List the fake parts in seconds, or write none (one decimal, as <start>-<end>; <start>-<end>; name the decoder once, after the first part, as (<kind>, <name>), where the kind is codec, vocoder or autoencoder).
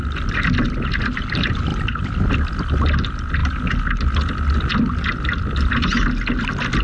1.7-2.3 (vocoder, BigVGAN v2)